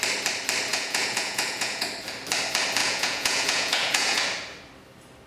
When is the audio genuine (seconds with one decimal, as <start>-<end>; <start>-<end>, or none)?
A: 0.0-0.7; 1.9-2.8; 4.2-5.3